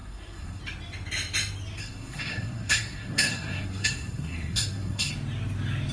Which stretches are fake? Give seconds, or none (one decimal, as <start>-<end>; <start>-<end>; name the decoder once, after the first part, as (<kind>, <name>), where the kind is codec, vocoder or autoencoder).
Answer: 0.0-0.6 (codec, SNAC); 1.8-5.1